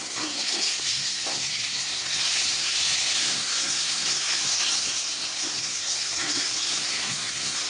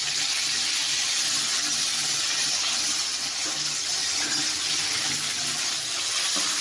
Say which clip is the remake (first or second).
first